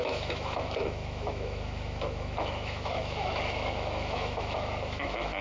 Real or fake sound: fake